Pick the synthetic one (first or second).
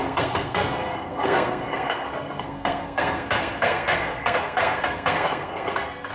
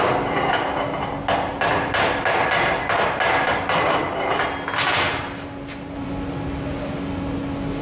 first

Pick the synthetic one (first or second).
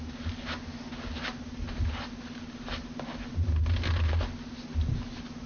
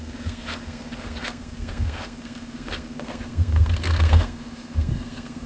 second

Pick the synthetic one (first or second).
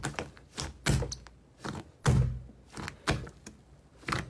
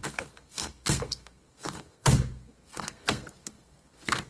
second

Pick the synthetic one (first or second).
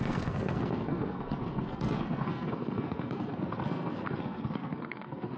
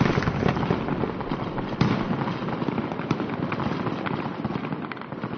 first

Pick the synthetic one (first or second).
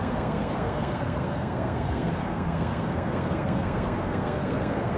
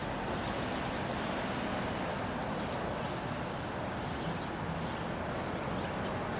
first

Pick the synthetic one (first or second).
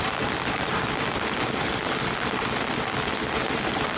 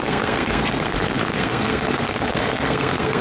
second